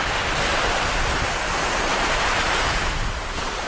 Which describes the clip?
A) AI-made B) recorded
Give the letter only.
B